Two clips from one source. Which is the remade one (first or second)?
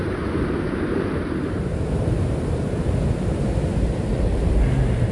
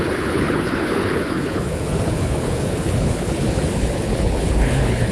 second